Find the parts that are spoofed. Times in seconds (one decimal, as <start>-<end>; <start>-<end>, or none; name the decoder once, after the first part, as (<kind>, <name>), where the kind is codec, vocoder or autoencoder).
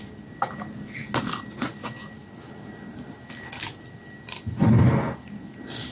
none